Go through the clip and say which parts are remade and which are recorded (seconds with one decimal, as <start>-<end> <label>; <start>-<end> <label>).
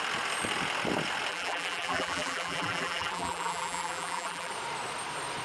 0.0-1.3 recorded; 1.3-4.5 remade; 4.5-5.4 recorded